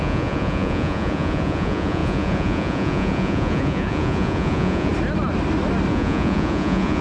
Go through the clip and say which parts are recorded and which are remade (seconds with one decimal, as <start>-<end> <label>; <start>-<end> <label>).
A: 0.0-4.9 remade; 4.9-5.9 recorded; 5.9-7.0 remade